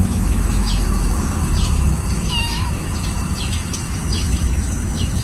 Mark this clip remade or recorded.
remade